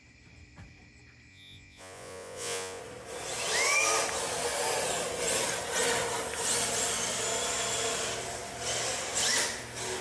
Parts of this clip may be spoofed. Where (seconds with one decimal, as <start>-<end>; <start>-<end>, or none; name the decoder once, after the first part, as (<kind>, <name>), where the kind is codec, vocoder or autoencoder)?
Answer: 1.3-2.8 (vocoder, Vocos)